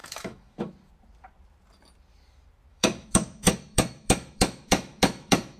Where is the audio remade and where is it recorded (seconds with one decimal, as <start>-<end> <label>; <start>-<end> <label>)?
0.0-0.7 remade; 0.7-2.7 recorded; 2.7-5.6 remade